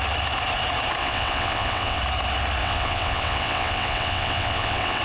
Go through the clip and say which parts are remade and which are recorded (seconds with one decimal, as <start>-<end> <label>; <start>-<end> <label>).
0.0-1.0 recorded; 1.0-2.0 remade; 2.0-2.6 recorded; 2.6-5.0 remade

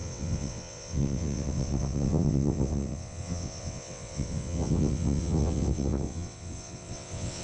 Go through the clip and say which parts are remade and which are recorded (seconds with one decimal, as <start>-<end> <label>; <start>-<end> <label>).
0.0-7.4 remade

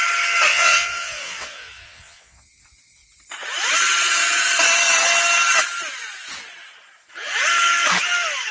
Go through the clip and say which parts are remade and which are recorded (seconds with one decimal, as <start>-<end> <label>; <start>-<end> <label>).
0.0-0.5 recorded; 0.5-2.5 remade; 2.5-8.5 recorded

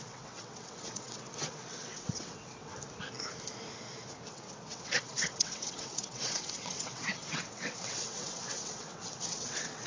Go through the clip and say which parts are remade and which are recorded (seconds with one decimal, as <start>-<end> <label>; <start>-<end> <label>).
0.0-2.7 remade; 2.7-4.3 recorded; 4.3-9.9 remade